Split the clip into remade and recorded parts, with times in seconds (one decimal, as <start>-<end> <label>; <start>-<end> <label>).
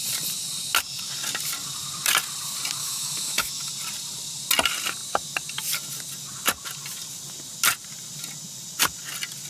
0.0-2.8 recorded; 2.8-3.7 remade; 3.7-9.5 recorded